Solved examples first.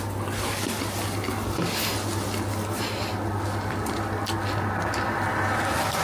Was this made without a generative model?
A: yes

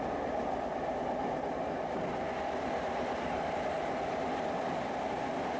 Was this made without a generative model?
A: yes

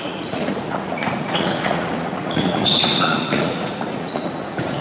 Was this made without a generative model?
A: no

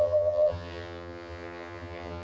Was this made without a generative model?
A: no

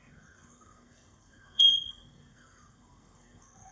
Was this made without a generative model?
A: no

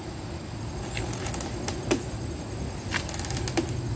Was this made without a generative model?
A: yes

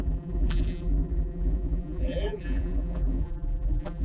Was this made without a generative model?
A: no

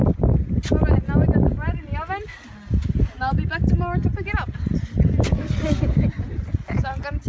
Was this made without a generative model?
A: yes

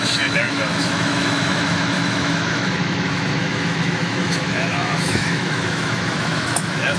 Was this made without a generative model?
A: no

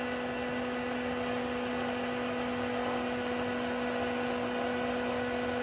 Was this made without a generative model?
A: yes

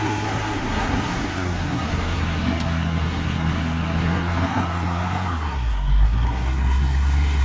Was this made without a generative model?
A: no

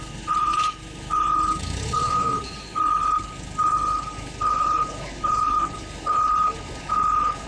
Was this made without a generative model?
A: no